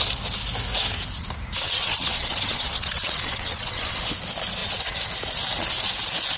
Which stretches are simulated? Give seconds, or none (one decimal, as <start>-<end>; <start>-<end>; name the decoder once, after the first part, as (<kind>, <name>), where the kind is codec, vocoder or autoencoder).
1.6-4.0 (vocoder, WaveNeXt); 4.6-5.1